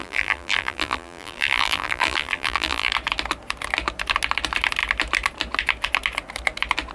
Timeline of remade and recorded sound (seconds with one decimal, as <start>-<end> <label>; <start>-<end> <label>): 0.0-2.9 remade; 2.9-6.9 recorded